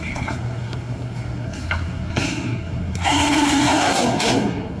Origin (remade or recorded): remade